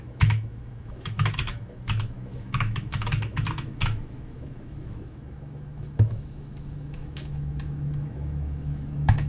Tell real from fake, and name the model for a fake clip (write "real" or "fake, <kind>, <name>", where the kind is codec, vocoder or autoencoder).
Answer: fake, autoencoder, DAC-VAE